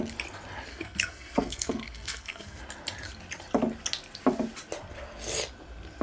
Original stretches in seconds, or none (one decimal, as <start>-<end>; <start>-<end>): 0.0-0.7; 2.6-6.0